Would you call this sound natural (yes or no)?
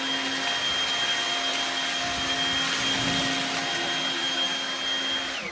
yes